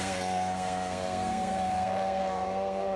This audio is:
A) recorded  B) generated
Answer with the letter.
B